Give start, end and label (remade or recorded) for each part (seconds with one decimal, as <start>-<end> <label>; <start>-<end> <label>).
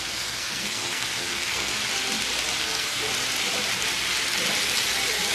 0.0-1.7 remade; 1.7-2.6 recorded; 2.6-3.1 remade; 3.1-5.3 recorded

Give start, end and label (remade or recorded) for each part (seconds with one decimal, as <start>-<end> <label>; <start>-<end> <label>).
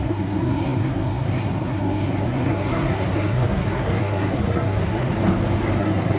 0.0-5.1 remade; 5.1-5.8 recorded; 5.8-6.2 remade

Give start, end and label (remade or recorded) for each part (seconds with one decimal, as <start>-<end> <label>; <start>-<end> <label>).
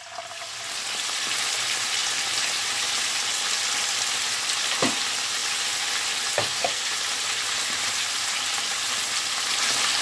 0.0-6.4 recorded; 6.4-6.9 remade; 6.9-10.0 recorded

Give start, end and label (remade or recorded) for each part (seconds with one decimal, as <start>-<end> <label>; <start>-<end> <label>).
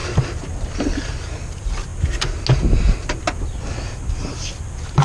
0.0-5.0 recorded